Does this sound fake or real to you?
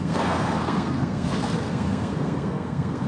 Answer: fake